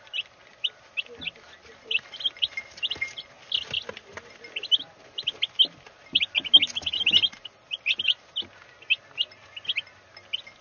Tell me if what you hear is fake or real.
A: real